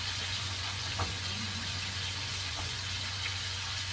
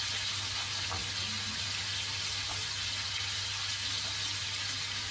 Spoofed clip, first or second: first